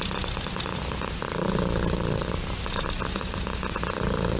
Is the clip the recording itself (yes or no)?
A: yes